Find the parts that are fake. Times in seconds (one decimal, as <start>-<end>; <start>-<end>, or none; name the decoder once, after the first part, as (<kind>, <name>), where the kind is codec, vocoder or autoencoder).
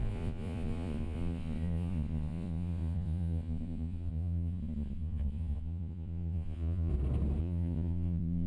0.0-6.9 (vocoder, Vocos); 7.4-8.5